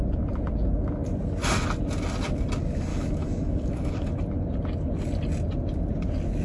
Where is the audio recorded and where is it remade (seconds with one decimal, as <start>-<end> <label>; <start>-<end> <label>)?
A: 0.0-2.9 recorded; 2.9-4.2 remade; 4.2-6.4 recorded